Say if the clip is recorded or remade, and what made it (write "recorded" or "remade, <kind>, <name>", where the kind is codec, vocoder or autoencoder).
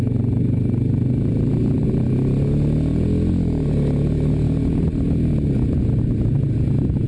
recorded